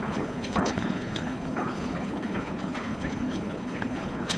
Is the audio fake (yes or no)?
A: yes